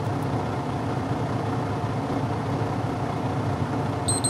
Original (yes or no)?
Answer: yes